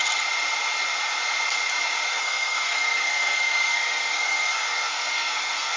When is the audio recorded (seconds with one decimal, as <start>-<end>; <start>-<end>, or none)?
0.0-2.1